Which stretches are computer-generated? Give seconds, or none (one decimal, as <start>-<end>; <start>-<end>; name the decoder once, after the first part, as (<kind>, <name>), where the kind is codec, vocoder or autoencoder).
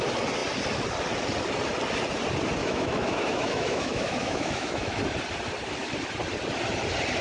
2.6-5.0 (autoencoder, DAC-VAE)